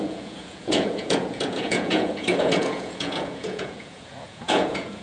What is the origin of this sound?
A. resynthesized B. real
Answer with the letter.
A